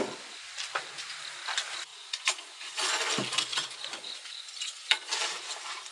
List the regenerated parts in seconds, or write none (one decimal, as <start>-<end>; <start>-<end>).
1.9-3.1; 3.5-5.1